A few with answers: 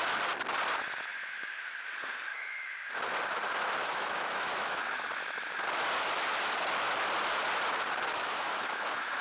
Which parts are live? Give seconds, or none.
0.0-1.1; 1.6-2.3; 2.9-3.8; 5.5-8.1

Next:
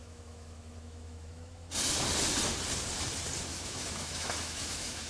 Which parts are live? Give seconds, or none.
1.7-3.5

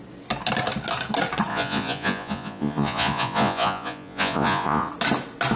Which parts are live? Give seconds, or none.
0.0-1.5; 4.9-5.6

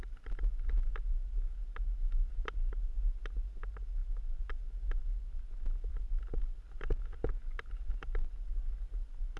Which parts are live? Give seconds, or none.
0.0-9.4

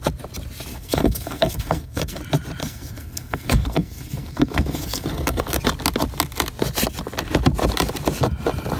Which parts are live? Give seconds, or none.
0.0-0.7; 2.2-2.6; 5.6-8.8

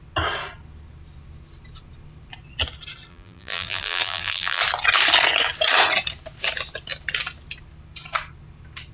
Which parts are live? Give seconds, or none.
0.0-3.1; 4.6-8.9

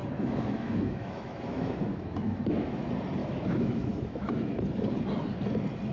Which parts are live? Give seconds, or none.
2.8-3.2; 4.3-5.9

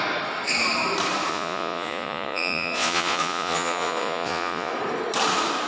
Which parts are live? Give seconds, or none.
0.0-1.3; 4.7-5.7